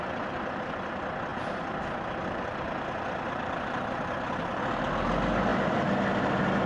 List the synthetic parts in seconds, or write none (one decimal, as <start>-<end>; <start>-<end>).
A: none